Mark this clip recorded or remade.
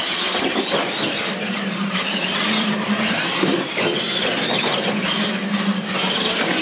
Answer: recorded